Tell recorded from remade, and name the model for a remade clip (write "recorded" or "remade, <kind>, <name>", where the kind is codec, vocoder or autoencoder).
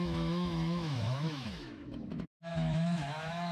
remade, autoencoder, DAC-VAE